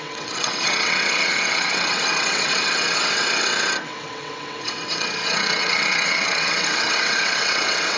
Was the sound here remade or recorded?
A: remade